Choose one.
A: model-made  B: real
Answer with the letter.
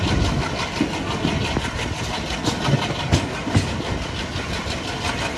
B